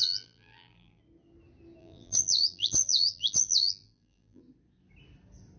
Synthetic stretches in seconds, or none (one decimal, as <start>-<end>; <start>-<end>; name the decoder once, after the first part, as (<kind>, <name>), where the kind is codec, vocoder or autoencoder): 0.0-1.0 (vocoder, BigVGAN v2); 1.8-4.4